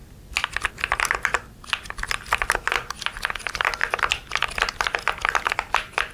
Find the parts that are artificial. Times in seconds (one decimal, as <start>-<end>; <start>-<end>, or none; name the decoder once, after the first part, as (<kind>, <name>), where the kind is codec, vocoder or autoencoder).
none